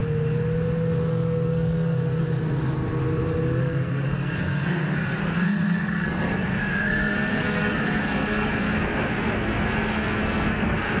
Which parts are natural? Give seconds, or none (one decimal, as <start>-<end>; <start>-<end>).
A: 0.0-1.1; 2.2-3.6